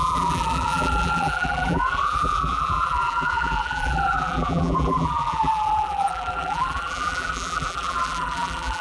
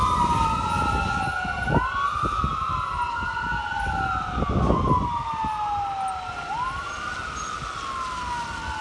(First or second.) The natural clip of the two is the second